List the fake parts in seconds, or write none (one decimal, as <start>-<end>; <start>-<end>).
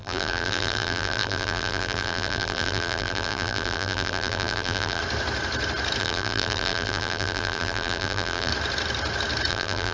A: 0.0-5.0; 6.0-8.5; 9.5-9.9